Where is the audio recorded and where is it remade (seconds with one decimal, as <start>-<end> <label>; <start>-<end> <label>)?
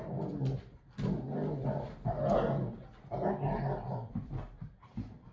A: 0.0-5.3 recorded